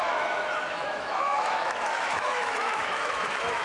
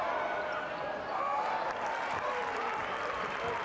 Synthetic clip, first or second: first